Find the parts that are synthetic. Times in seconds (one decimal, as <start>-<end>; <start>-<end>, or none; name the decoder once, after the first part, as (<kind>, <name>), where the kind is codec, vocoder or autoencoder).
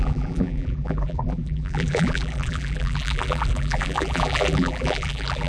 0.0-5.5 (vocoder, BigVGAN v2)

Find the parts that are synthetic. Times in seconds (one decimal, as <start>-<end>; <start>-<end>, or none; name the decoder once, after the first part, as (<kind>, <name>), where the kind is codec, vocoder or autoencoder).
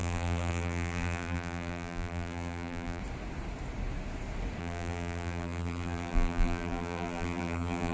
0.0-3.0 (vocoder, BigVGAN v2); 4.6-7.9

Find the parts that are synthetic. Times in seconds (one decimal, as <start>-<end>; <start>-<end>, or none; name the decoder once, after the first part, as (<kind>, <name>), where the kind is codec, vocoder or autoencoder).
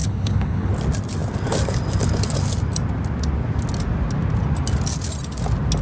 0.0-0.7 (codec, HILCodec)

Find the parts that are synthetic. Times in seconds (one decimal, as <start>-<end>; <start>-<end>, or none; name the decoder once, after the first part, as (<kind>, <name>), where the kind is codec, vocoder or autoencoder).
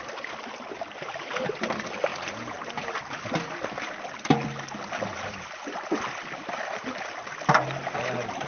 none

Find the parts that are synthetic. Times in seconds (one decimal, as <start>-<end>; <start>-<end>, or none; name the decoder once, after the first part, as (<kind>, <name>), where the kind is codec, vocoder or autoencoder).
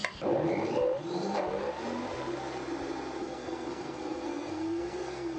3.2-5.4 (codec, SNAC)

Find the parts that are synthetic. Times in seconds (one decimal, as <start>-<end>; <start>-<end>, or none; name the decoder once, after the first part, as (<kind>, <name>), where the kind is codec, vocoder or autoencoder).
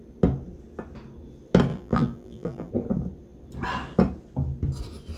1.7-2.7 (vocoder, BigVGAN v2)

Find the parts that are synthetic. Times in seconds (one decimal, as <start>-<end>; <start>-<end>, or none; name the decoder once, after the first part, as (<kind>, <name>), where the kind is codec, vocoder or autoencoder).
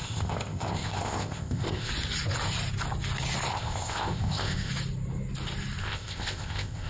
0.0-1.9 (codec, ZipCodec); 3.5-4.7; 5.8-6.9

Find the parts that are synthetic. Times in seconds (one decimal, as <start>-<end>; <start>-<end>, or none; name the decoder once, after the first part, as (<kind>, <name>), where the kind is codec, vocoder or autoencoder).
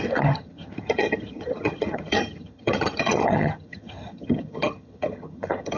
0.0-5.8 (vocoder, HiFi-GAN)